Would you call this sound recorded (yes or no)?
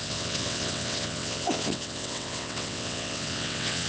no